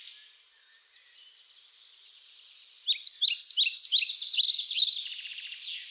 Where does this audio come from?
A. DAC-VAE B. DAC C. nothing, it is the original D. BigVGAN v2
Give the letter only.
C